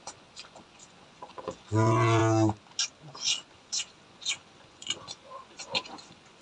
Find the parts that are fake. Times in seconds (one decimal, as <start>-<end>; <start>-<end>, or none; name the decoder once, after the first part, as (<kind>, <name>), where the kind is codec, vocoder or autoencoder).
0.0-2.2 (vocoder, Vocos); 3.5-6.4